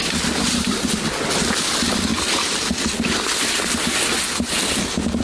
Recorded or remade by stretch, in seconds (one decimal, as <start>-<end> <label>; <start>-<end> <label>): 0.0-0.9 remade; 0.9-5.2 recorded